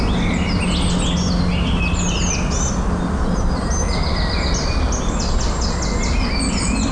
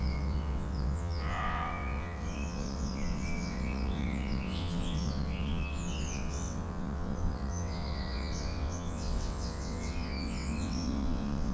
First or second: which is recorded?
first